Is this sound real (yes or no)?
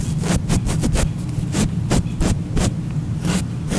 yes